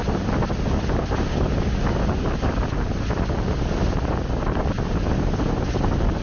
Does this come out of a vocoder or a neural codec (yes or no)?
no